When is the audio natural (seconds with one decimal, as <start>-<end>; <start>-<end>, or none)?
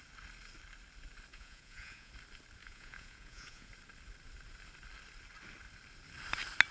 0.0-1.3; 2.1-2.6; 3.7-6.7